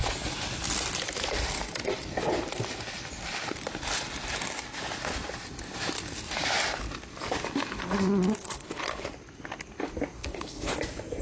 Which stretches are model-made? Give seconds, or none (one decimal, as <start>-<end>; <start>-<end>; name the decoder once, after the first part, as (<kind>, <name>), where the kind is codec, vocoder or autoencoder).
8.4-9.1 (codec, HILCodec); 10.2-10.7